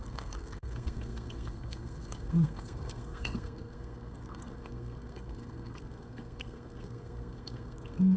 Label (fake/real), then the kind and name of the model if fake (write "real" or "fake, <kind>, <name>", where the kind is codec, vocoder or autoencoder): fake, codec, SNAC